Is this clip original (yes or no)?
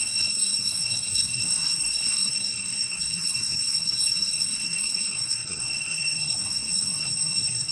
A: no